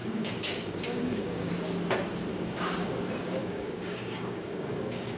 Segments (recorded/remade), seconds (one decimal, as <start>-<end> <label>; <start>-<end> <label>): 0.0-1.5 remade; 1.5-2.3 recorded; 2.3-2.9 remade; 2.9-3.4 recorded; 3.4-5.2 remade